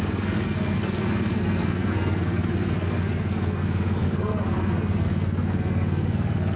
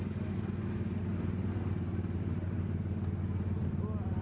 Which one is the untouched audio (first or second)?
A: second